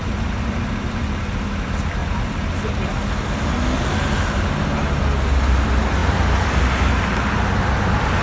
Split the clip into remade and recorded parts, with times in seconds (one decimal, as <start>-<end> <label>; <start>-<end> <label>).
0.0-8.2 recorded

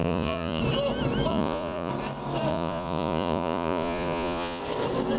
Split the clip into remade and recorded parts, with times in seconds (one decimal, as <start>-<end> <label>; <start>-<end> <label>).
0.0-0.6 remade; 0.6-1.3 recorded; 1.3-1.9 remade; 1.9-2.5 recorded; 2.5-4.6 remade; 4.6-5.2 recorded

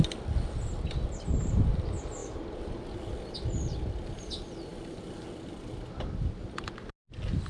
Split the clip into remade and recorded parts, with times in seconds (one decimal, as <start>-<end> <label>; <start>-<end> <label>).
0.0-7.5 recorded

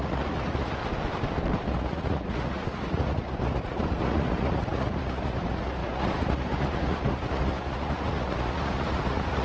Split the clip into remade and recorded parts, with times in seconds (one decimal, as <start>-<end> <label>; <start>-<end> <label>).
0.0-0.8 remade; 0.8-1.7 recorded; 1.7-9.4 remade

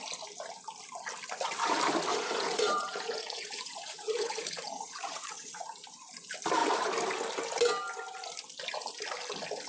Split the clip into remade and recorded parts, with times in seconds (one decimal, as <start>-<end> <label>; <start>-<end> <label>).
0.0-2.1 recorded; 2.1-5.6 remade; 5.6-9.7 recorded